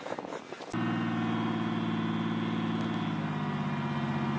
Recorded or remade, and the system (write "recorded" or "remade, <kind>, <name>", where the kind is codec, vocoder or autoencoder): recorded